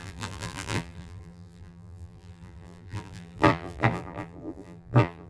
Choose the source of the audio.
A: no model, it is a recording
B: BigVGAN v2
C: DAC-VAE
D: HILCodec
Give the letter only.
B